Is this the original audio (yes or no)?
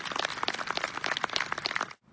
yes